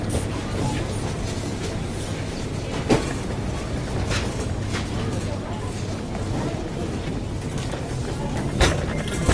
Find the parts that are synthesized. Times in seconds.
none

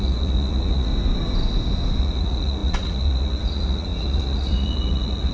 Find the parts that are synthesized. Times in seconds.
0.0-0.9 (vocoder, Vocos); 2.0-5.3

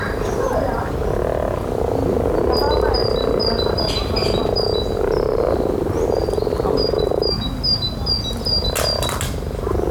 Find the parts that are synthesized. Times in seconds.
none

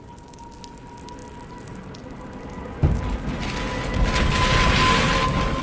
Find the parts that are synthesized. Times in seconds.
none

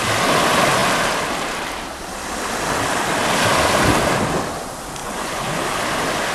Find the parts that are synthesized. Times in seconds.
5.0-5.6 (vocoder, Vocos)

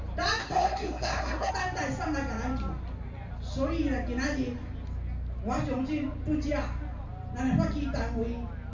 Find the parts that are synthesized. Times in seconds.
0.4-1.5 (codec, SNAC)